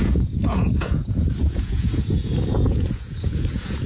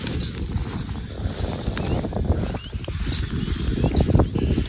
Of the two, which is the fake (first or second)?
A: first